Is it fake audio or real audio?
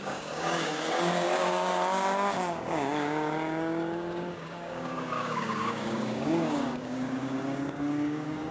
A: fake